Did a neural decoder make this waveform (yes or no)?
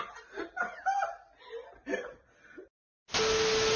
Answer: no